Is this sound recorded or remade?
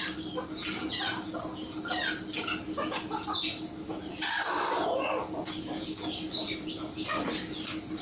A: recorded